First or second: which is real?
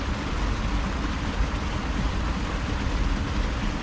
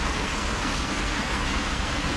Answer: first